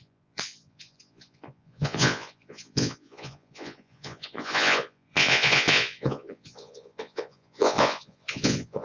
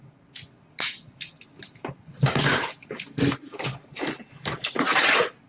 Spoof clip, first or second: first